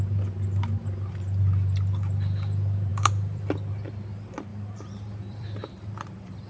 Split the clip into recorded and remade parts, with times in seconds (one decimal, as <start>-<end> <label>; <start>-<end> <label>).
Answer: 0.0-2.9 recorded; 2.9-3.5 remade; 3.5-4.5 recorded; 4.5-6.5 remade